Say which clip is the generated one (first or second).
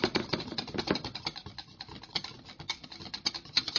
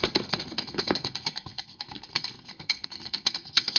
second